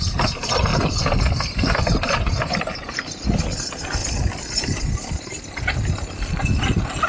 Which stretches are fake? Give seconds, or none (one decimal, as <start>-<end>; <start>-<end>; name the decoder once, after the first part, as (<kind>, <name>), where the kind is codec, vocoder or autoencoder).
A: none